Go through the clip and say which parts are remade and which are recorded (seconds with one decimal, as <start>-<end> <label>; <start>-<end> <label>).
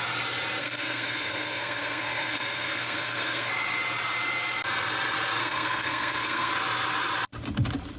0.0-0.6 recorded; 0.6-3.5 remade; 3.5-5.4 recorded; 5.4-6.5 remade; 6.5-8.0 recorded